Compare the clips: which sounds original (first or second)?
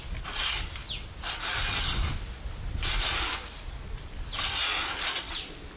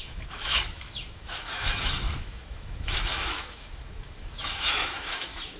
first